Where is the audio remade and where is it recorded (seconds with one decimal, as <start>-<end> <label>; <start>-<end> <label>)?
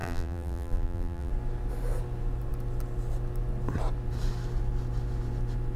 0.0-1.3 remade; 1.3-5.8 recorded